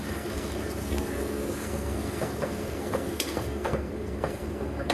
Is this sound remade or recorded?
remade